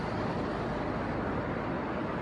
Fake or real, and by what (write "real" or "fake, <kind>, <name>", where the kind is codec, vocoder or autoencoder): real